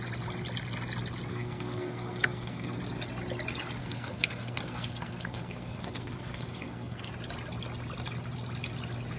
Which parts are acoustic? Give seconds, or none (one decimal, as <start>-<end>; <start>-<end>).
0.0-1.3; 2.8-3.8; 7.1-9.2

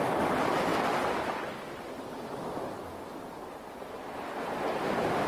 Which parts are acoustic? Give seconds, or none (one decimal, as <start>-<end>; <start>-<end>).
0.0-5.3

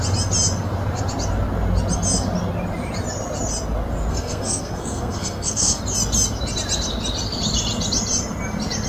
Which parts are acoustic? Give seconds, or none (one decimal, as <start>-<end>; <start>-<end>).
0.0-4.1; 5.8-8.9